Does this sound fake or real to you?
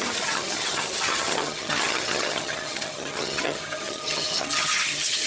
fake